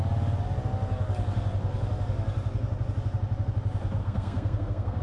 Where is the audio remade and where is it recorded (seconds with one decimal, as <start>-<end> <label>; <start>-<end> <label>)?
0.0-4.0 recorded; 4.0-5.0 remade